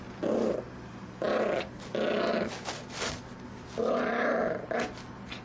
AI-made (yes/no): no